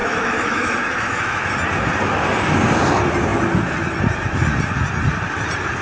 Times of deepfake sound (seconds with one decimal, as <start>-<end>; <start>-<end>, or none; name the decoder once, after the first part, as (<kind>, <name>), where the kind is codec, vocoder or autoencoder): 0.0-1.5 (autoencoder, DAC-VAE)